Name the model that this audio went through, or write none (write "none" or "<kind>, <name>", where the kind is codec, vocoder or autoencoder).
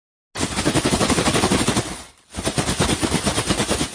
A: none